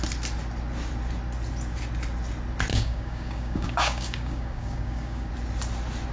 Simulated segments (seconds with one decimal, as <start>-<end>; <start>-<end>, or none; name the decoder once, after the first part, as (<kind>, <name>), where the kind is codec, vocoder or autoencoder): 2.7-5.3 (codec, DAC)